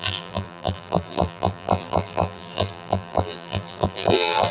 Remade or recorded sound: remade